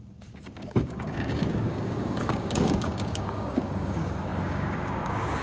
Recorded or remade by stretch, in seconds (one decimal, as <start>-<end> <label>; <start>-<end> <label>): 0.0-5.4 remade